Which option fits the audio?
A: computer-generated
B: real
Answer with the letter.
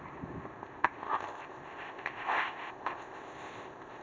A